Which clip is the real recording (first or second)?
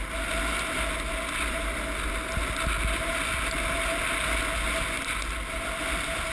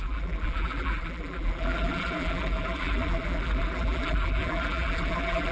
first